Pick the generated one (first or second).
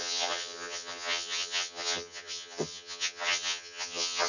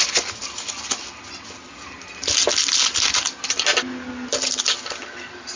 first